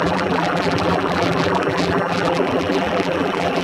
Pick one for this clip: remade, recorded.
remade